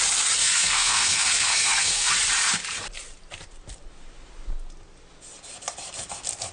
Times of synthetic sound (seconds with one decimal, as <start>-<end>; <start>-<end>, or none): 0.4-2.1